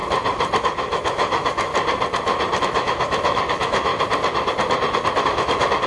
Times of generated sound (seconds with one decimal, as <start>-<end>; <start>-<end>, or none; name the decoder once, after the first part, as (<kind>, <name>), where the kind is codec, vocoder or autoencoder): 0.6-1.7 (autoencoder, DAC-VAE); 2.6-3.9; 5.2-5.9